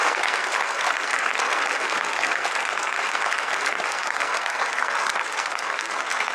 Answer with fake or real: fake